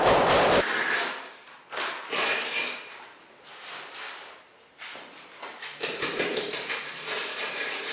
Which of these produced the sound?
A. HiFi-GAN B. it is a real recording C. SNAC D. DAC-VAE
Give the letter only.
B